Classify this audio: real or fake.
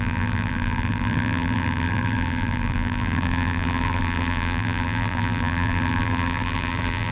fake